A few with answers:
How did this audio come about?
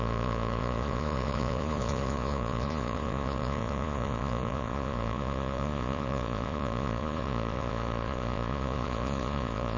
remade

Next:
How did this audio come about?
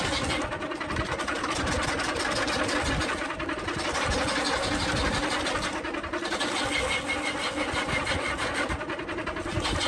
recorded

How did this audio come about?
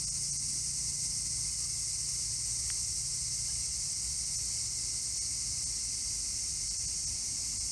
recorded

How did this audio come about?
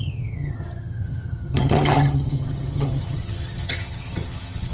remade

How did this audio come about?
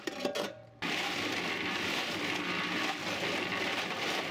recorded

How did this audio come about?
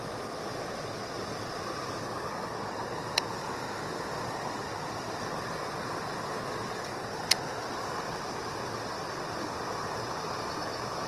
recorded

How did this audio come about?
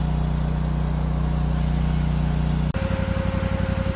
recorded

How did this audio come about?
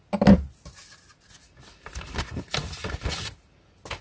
recorded